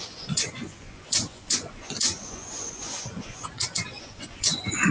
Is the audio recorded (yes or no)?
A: no